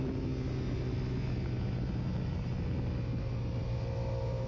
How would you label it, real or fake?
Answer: real